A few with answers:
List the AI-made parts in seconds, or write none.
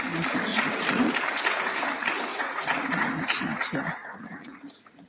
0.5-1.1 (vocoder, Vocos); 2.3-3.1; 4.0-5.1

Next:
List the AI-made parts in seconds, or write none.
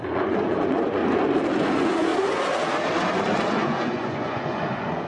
0.0-1.0 (vocoder, Vocos); 1.5-2.1; 3.5-5.1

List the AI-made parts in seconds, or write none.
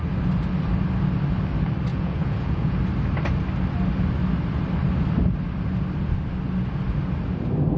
1.9-2.8 (vocoder, Vocos)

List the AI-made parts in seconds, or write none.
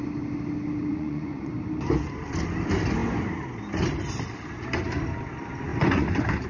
0.9-1.5 (vocoder, Vocos); 5.7-6.5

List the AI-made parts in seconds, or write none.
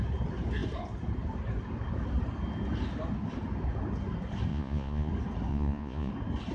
4.5-5.1 (vocoder, Vocos); 5.5-6.1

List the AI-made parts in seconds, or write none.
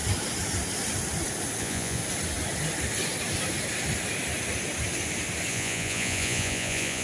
1.6-2.0 (vocoder, Vocos); 5.5-7.0